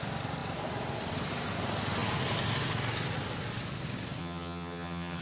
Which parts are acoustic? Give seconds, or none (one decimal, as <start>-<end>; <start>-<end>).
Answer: 0.0-4.2